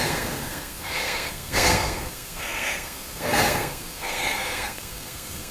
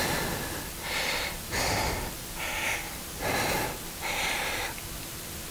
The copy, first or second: first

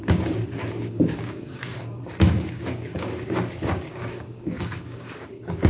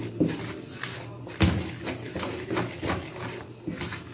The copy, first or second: first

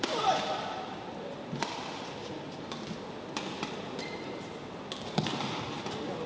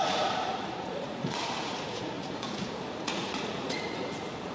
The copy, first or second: second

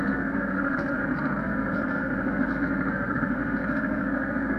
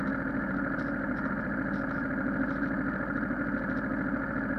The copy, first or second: first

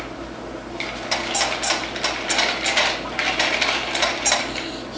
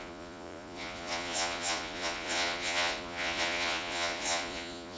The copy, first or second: second